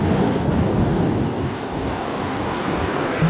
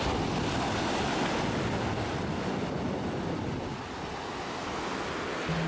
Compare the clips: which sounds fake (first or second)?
first